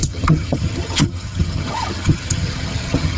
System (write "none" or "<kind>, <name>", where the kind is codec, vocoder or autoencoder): vocoder, HiFi-GAN